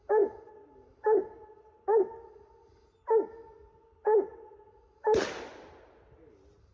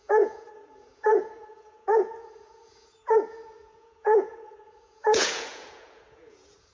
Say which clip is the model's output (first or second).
second